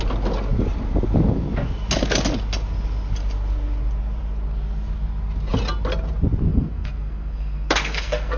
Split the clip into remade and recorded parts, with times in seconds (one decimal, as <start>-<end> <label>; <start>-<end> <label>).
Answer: 0.0-6.5 recorded; 6.5-8.4 remade